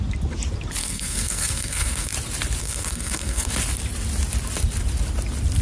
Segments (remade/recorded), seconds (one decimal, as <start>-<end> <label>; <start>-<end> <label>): 0.0-0.8 recorded; 0.8-2.1 remade; 2.1-2.6 recorded; 2.6-3.5 remade; 3.5-5.6 recorded